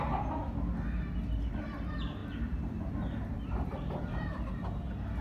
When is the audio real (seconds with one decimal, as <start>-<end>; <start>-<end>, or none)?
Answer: 0.0-2.2; 4.5-5.2